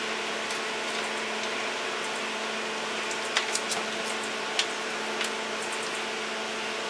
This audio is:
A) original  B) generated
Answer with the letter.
A